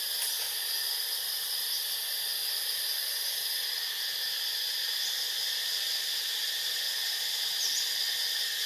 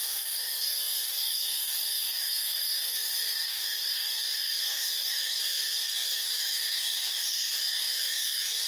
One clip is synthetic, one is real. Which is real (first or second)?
first